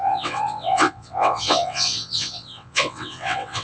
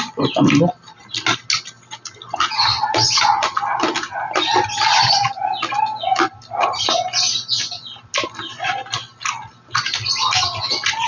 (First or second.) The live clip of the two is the second